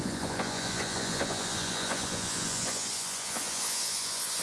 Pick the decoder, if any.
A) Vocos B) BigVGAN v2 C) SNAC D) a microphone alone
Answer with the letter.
A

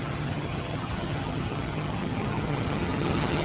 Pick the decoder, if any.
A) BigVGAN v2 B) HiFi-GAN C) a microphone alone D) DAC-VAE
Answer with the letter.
B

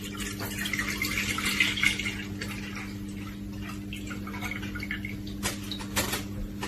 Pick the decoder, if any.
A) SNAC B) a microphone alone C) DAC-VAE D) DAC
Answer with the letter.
B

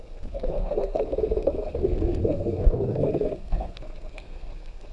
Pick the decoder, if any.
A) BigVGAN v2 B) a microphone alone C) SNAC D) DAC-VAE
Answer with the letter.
C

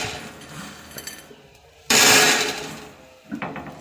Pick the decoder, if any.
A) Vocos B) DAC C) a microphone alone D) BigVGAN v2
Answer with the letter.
C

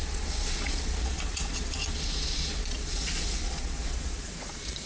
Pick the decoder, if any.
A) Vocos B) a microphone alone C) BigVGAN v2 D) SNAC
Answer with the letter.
A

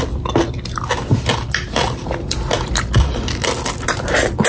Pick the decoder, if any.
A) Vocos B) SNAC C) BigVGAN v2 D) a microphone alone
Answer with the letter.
D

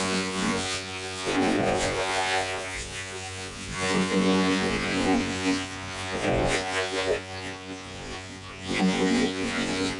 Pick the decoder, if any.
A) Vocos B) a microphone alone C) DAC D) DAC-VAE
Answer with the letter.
A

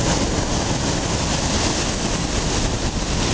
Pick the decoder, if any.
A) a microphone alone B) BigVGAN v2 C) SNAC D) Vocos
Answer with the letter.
A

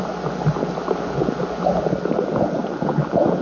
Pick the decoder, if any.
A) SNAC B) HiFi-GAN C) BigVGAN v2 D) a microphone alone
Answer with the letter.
D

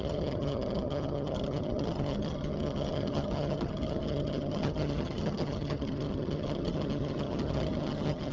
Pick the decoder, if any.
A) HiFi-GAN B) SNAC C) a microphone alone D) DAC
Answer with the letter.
A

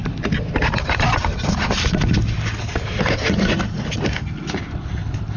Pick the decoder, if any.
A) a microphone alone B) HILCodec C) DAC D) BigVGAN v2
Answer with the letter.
A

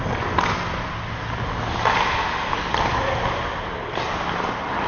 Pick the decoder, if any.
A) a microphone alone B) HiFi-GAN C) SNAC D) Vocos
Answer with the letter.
A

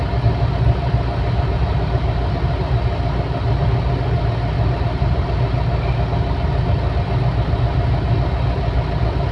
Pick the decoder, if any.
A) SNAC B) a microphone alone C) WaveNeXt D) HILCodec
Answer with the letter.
B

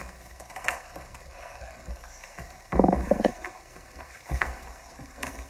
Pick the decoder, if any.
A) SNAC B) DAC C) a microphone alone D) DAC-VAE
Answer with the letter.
A